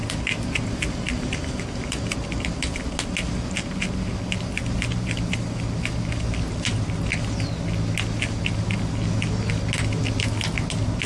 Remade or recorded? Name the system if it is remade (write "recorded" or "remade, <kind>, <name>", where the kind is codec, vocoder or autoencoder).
recorded